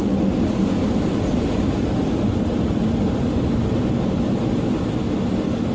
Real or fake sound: real